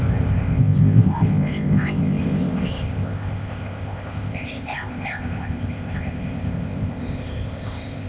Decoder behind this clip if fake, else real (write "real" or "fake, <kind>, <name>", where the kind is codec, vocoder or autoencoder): fake, codec, ZipCodec